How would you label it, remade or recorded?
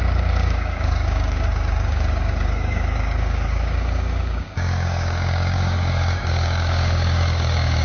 remade